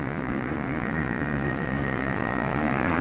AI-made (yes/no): yes